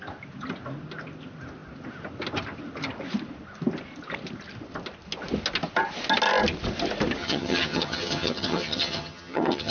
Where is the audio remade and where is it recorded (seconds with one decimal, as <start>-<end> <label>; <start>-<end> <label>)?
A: 0.0-7.2 recorded; 7.2-9.7 remade